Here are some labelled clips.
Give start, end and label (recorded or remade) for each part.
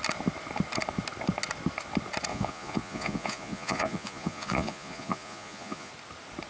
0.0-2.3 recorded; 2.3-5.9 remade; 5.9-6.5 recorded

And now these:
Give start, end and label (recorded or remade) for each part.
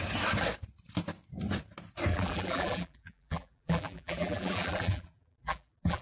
0.0-2.1 recorded; 2.1-6.0 remade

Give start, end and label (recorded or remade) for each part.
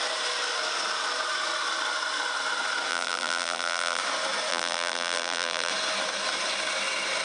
0.0-2.9 recorded; 2.9-4.0 remade; 4.0-4.5 recorded; 4.5-5.7 remade; 5.7-7.2 recorded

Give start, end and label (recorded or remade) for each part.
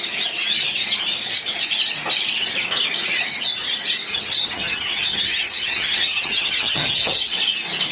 0.0-4.1 recorded; 4.1-7.3 remade; 7.3-7.9 recorded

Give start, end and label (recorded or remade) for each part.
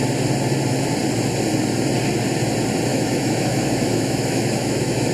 0.0-2.9 recorded; 2.9-5.1 remade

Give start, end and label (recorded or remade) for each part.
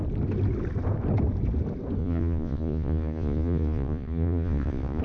0.0-2.0 recorded; 2.0-5.0 remade